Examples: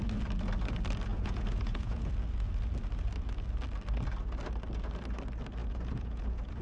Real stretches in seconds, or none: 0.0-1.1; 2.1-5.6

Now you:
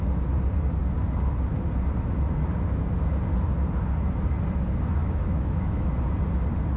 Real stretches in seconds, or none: 0.0-5.0; 5.9-6.8

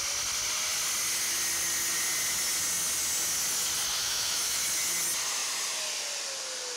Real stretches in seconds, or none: 0.0-4.0; 4.6-6.8

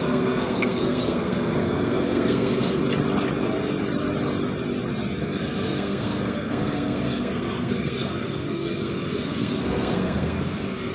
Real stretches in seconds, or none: 2.8-5.2

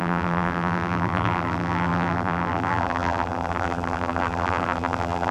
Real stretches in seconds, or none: none

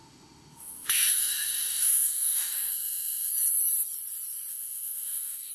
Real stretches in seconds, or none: 3.3-4.5